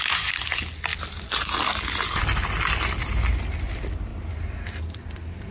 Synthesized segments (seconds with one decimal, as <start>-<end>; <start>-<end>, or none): none